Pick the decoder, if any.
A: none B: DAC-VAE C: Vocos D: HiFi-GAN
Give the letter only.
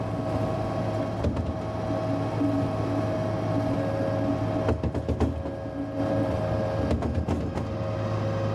A